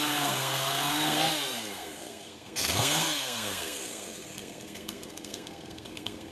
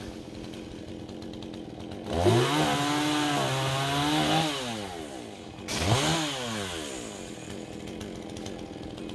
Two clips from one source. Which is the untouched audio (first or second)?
second